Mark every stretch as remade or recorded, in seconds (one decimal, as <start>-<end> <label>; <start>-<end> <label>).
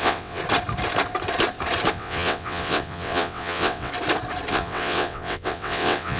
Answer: 0.0-0.4 remade; 0.4-1.9 recorded; 1.9-3.9 remade; 3.9-4.5 recorded; 4.5-6.2 remade